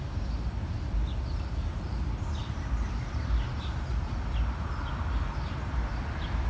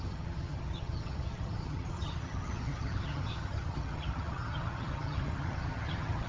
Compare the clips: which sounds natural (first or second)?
first